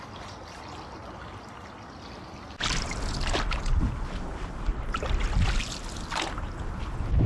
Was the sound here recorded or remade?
recorded